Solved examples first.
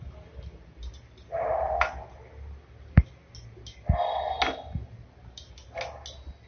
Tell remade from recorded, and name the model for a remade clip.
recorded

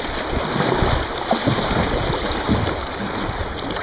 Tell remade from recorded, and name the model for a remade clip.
recorded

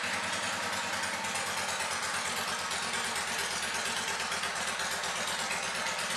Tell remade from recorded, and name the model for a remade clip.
recorded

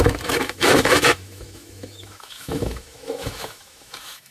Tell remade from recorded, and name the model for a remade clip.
remade, autoencoder, DAC-VAE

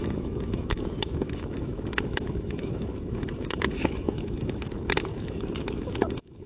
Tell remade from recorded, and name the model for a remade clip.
remade, autoencoder, DAC-VAE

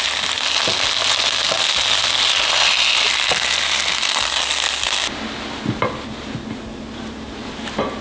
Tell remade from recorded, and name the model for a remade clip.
recorded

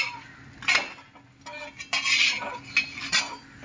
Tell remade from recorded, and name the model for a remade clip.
recorded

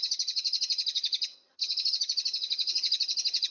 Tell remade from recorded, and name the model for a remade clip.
remade, vocoder, HiFi-GAN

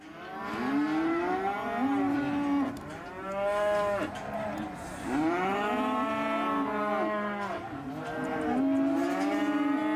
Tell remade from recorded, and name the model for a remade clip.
recorded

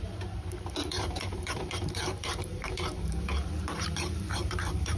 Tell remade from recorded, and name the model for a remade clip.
remade, vocoder, BigVGAN v2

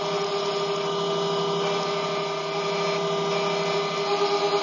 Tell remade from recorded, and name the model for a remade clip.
recorded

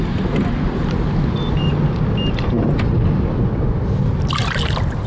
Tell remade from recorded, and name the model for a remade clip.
recorded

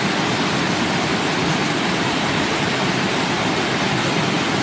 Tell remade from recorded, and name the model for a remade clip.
recorded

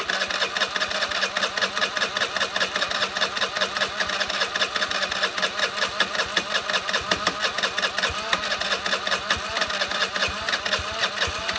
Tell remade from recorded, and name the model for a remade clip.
recorded